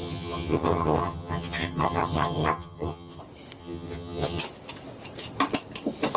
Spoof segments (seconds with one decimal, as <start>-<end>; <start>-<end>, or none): 0.0-3.2; 3.6-4.4